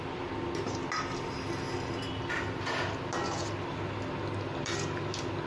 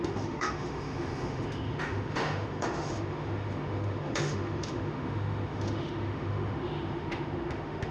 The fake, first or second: second